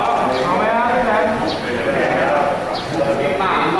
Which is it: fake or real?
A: real